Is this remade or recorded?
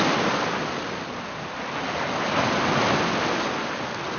recorded